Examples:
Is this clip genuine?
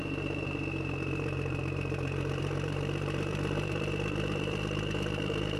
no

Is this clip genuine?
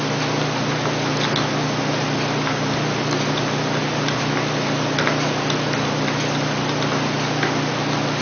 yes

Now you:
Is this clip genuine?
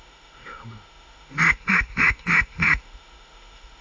no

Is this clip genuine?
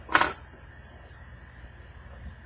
yes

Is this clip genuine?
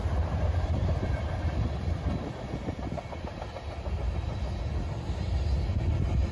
yes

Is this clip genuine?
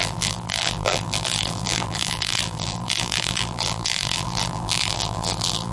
no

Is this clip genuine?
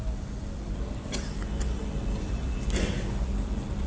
yes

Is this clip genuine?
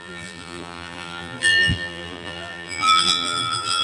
no